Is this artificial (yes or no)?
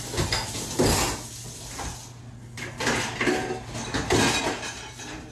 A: no